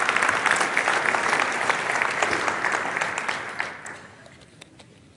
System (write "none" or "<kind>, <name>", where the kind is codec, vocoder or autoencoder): none